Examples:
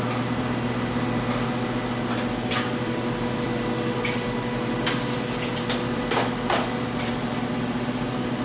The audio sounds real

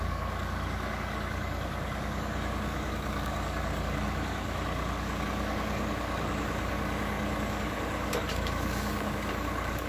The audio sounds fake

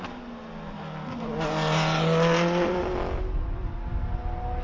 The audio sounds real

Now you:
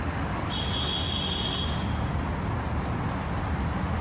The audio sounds real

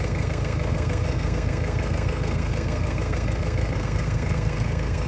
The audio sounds fake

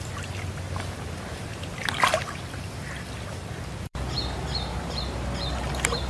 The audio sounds fake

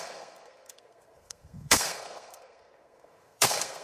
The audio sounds fake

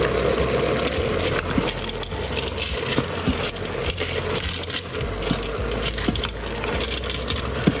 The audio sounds real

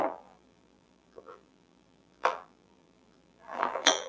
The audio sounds fake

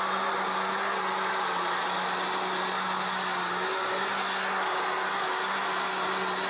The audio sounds real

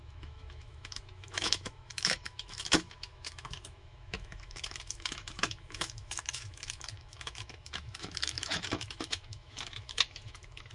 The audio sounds fake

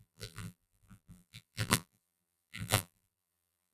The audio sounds fake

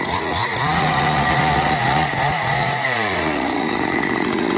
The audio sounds fake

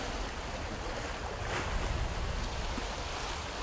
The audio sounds real